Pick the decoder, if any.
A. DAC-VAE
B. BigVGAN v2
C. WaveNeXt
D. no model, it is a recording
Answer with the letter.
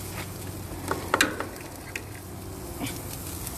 D